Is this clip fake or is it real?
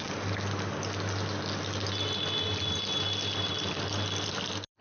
real